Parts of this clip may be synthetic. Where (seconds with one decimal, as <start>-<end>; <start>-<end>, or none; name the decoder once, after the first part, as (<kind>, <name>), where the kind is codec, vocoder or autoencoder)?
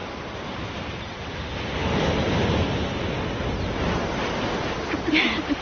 none